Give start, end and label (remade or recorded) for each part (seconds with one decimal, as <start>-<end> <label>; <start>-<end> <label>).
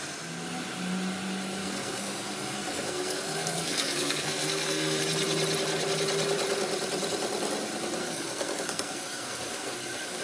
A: 0.0-1.6 recorded; 1.6-5.0 remade; 5.0-8.0 recorded; 8.0-10.2 remade